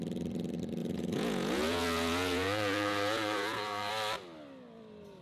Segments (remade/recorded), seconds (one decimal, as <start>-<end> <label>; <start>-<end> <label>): 0.0-0.8 recorded; 0.8-3.9 remade; 3.9-5.2 recorded